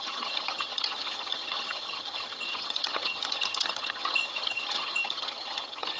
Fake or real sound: fake